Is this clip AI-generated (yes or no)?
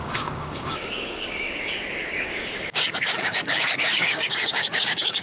yes